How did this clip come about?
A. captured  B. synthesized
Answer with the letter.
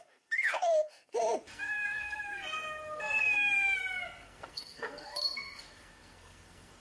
B